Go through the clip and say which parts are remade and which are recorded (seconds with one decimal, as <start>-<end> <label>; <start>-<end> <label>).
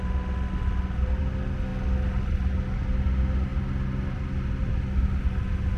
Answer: 0.0-5.8 recorded